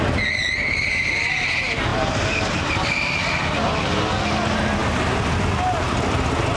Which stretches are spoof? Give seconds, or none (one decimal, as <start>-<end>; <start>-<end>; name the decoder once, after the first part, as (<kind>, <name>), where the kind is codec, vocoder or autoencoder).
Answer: 1.9-3.4 (vocoder, BigVGAN v2)